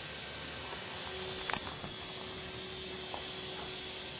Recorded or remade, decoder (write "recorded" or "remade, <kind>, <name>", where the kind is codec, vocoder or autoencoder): recorded